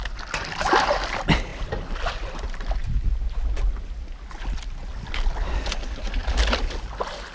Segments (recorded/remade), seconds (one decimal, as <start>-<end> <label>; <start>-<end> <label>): 0.0-7.3 recorded